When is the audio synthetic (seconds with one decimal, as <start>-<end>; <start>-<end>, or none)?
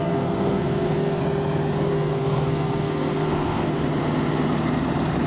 0.0-1.2; 1.9-3.9